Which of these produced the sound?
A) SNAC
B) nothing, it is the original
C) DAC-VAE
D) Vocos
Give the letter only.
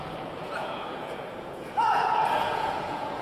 D